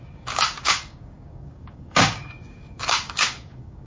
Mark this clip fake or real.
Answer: fake